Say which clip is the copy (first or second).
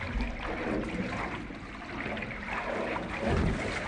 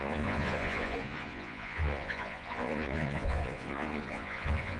second